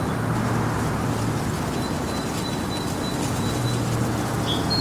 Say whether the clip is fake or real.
real